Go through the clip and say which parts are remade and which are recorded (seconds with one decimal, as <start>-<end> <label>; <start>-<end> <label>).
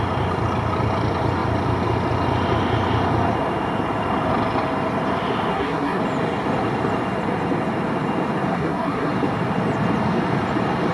0.0-5.5 recorded; 5.5-6.0 remade; 6.0-8.5 recorded; 8.5-9.1 remade; 9.1-10.9 recorded